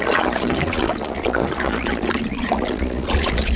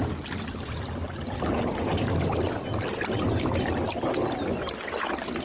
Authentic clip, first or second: second